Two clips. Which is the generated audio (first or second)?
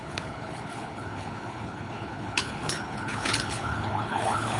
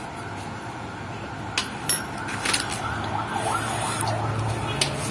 first